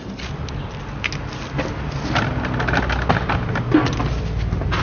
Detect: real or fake real